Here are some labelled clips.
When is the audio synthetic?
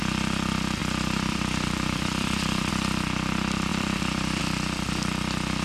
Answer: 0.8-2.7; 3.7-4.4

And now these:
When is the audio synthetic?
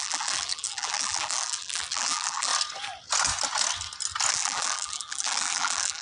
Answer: 0.0-2.5; 4.3-6.0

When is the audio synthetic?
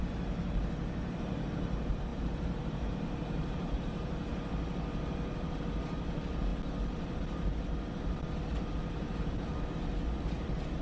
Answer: 0.0-4.3; 5.4-6.5; 7.1-10.8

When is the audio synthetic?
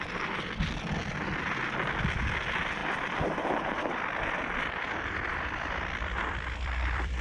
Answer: 2.8-7.2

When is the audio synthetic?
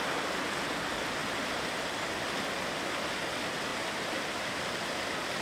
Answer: 3.7-4.6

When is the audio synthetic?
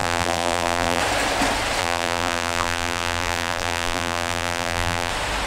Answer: 0.0-1.0; 1.8-5.1